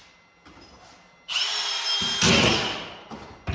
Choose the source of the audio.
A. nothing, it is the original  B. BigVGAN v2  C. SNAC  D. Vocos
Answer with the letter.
A